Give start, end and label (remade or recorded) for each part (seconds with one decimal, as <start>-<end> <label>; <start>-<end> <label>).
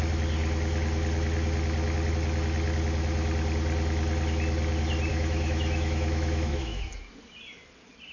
0.0-5.1 recorded; 5.1-6.8 remade; 6.8-8.1 recorded